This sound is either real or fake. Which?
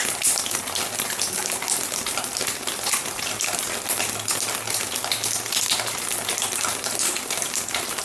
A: real